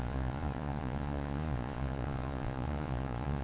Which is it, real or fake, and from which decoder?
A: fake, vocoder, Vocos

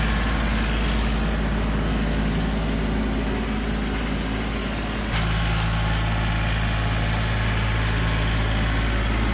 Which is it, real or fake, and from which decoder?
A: real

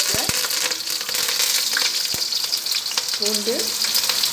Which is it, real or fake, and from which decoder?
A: real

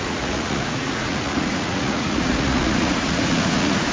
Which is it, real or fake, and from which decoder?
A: fake, vocoder, Vocos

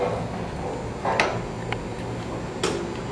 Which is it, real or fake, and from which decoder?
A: real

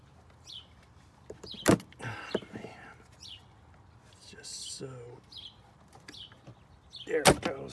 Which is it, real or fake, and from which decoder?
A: real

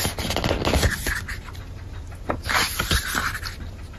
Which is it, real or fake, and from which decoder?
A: real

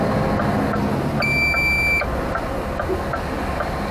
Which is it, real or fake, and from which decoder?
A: real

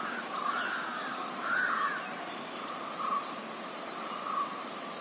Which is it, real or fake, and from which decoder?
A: real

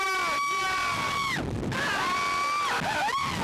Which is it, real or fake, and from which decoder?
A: real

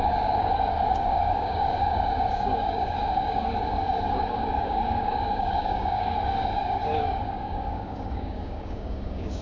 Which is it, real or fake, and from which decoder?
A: fake, codec, DAC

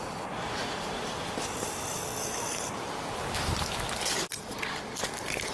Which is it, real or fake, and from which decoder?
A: real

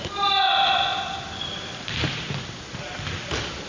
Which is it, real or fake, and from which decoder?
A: real